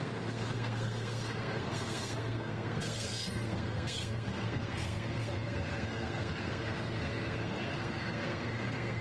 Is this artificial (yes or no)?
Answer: yes